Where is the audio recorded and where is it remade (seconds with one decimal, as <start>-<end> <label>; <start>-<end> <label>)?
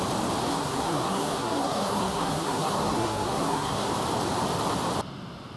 0.0-0.5 recorded; 0.5-3.9 remade; 3.9-5.6 recorded